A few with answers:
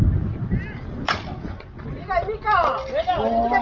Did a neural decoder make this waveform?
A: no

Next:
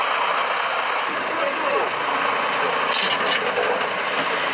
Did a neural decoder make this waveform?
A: no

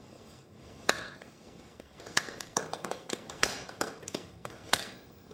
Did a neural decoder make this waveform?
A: yes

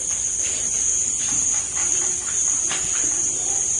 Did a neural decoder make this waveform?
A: no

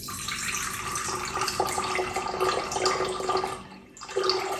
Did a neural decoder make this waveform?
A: no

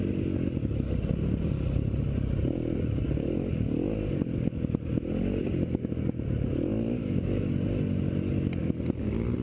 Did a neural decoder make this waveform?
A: no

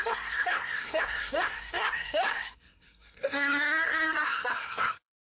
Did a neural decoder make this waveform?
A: yes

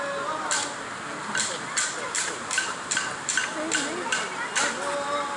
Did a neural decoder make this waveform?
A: no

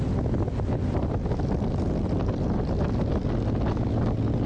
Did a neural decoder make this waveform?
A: no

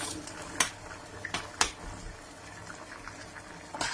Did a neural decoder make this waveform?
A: no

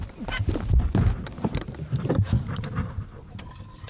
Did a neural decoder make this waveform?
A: no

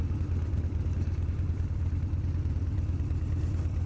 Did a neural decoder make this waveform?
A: no